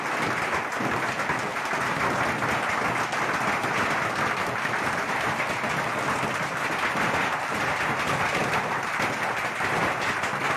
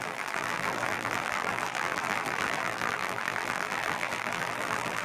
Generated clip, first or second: second